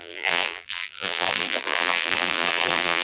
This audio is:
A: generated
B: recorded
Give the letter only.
A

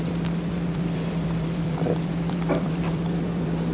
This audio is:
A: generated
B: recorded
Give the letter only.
A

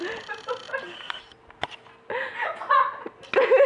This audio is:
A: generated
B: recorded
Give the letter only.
B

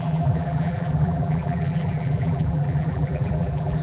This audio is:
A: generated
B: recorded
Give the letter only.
A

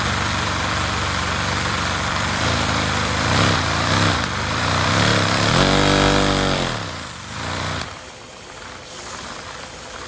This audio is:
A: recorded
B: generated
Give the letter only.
B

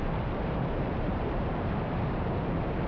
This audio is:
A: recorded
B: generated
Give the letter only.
B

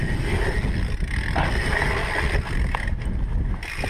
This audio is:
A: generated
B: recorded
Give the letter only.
B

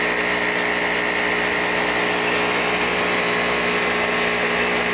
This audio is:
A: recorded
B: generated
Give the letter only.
A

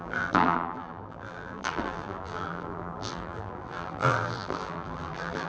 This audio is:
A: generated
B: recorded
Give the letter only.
A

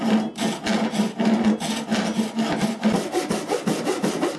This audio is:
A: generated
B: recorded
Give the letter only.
B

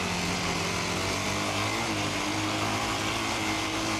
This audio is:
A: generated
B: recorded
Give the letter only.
B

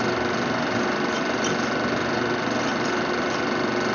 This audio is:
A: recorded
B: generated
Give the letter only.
A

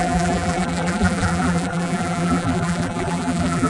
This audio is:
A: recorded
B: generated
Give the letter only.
B